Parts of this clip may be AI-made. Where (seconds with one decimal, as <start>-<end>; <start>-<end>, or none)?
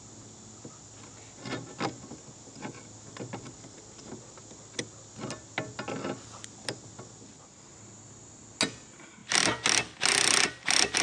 none